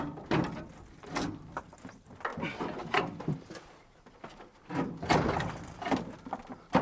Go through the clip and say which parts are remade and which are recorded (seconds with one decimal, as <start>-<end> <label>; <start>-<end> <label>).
0.0-6.8 recorded